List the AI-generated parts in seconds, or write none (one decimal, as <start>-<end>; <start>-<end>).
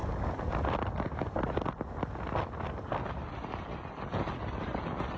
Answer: none